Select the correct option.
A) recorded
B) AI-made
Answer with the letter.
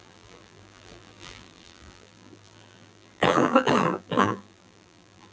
B